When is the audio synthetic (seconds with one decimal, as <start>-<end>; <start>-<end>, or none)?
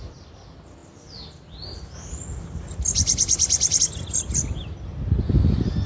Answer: none